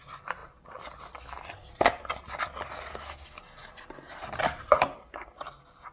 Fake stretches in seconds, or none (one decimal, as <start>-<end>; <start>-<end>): none